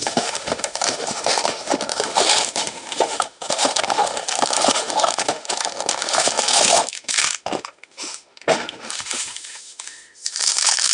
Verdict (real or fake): fake